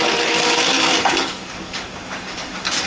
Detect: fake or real fake